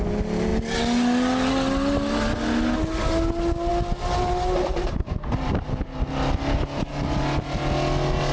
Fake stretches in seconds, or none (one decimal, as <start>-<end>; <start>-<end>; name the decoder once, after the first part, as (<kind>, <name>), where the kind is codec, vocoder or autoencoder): none